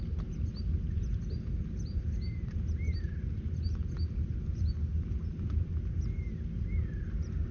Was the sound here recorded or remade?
recorded